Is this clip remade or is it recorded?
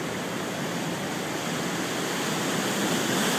recorded